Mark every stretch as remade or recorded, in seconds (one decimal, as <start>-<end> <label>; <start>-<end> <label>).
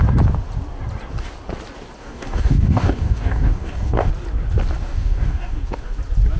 0.0-2.0 recorded; 2.0-4.1 remade; 4.1-4.8 recorded; 4.8-6.0 remade; 6.0-6.4 recorded